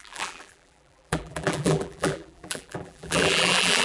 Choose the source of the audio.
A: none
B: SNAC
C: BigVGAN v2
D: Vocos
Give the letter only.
C